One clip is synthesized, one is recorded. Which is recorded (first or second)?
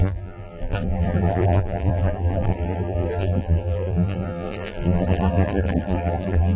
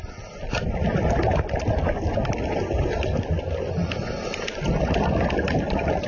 second